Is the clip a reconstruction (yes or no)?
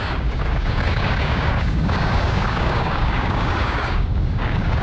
yes